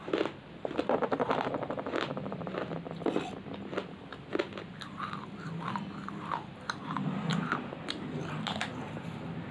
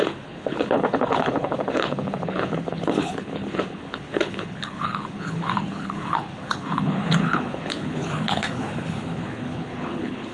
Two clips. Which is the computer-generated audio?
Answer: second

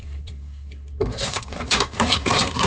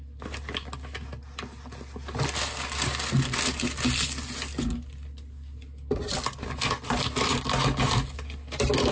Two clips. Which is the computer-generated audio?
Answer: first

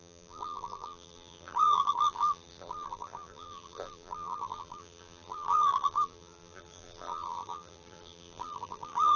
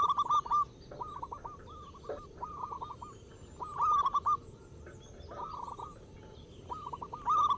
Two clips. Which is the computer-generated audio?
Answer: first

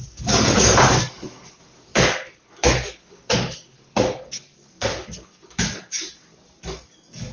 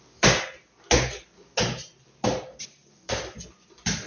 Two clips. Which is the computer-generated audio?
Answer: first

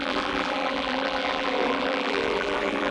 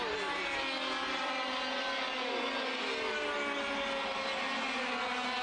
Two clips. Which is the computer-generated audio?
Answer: first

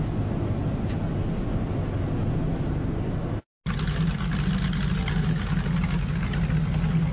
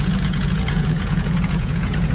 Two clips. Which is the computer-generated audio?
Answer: second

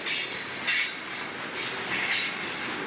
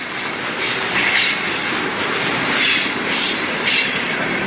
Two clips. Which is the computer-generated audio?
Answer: second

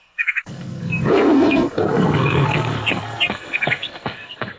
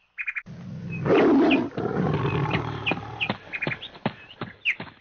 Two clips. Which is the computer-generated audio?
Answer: first